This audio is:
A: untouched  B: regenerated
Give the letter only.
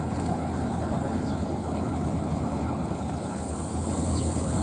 B